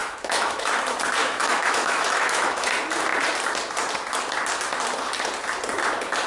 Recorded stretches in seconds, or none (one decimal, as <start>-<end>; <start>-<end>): 0.7-1.2; 2.7-6.3